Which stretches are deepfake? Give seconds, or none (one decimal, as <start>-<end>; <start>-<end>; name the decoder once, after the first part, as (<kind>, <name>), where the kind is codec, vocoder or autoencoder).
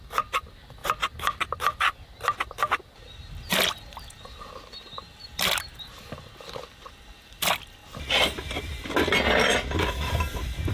none